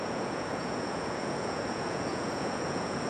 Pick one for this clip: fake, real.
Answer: fake